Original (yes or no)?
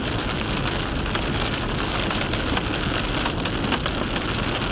yes